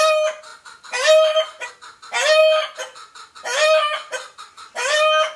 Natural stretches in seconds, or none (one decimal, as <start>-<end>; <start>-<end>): 0.0-0.5; 1.7-5.4